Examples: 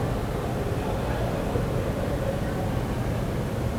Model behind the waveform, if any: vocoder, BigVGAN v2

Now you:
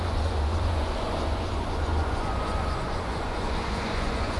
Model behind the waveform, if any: vocoder, Vocos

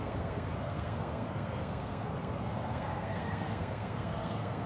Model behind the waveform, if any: codec, SNAC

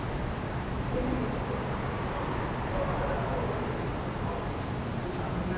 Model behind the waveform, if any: none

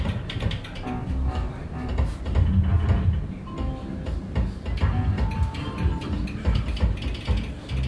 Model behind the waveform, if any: none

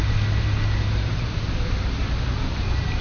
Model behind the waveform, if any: none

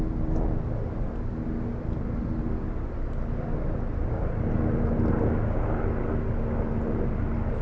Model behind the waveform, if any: none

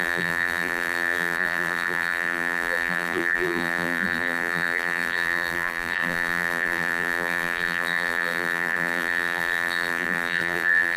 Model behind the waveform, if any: vocoder, BigVGAN v2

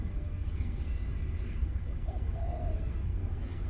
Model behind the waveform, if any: codec, SNAC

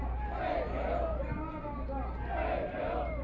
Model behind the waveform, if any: none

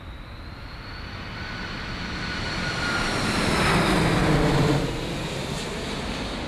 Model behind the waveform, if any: none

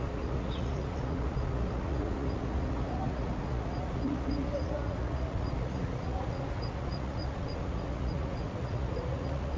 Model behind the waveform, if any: vocoder, Vocos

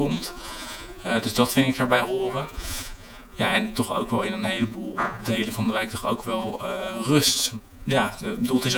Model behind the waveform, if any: vocoder, Vocos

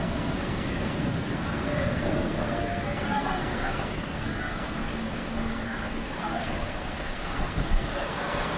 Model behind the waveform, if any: codec, SNAC